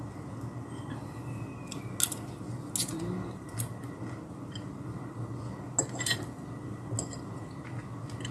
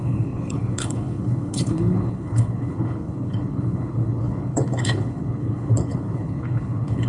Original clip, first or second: first